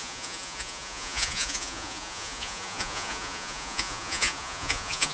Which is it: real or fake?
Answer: fake